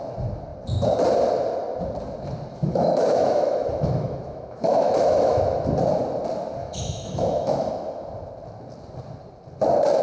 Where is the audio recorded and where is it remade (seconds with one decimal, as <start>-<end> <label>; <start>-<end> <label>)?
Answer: 0.0-2.5 recorded; 2.5-5.4 remade; 5.4-6.6 recorded; 6.6-7.7 remade; 7.7-10.0 recorded